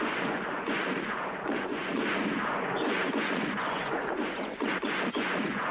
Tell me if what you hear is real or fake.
fake